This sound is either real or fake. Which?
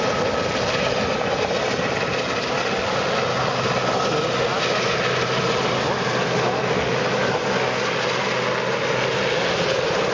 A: real